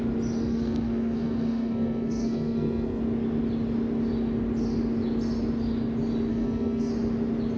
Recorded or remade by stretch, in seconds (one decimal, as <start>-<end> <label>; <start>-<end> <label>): 0.0-0.5 recorded; 0.5-3.0 remade; 3.0-6.3 recorded; 6.3-6.9 remade; 6.9-7.6 recorded